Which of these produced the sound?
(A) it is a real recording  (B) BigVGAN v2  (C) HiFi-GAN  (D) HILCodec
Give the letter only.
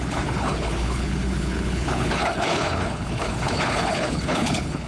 D